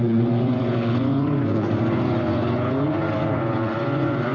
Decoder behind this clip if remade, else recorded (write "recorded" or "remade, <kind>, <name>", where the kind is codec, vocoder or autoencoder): remade, vocoder, Vocos